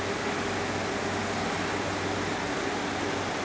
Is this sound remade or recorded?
recorded